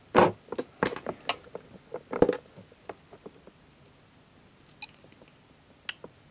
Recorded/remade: recorded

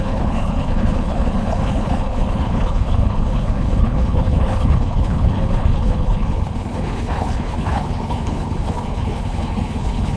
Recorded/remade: remade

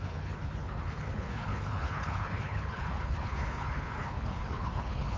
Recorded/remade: remade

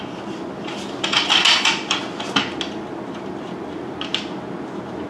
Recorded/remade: recorded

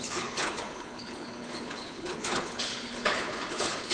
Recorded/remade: remade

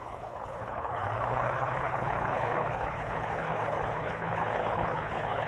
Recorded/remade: remade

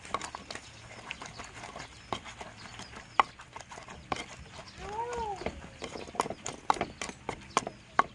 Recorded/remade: recorded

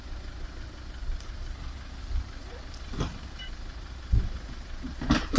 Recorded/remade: recorded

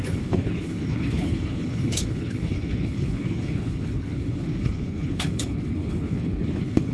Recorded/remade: remade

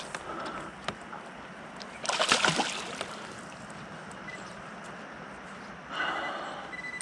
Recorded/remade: recorded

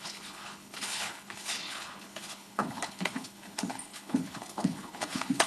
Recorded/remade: remade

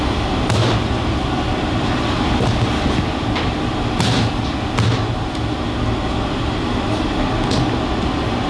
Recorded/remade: recorded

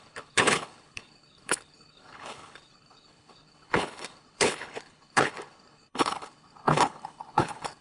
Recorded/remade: remade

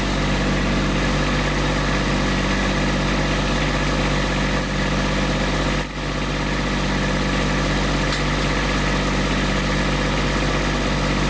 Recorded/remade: recorded